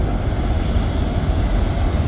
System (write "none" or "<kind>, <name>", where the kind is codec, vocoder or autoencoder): none